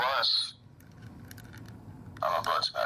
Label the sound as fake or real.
real